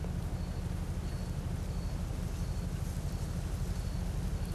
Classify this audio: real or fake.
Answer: real